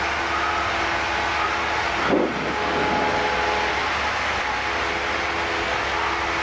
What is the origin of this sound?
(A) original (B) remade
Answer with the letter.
A